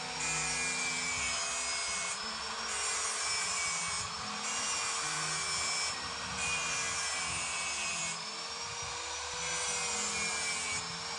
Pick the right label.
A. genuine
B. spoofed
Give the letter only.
A